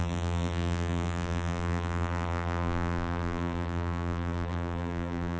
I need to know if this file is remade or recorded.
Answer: remade